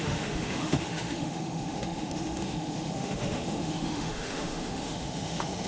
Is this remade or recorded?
remade